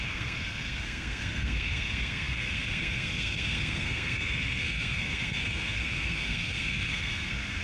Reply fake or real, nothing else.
fake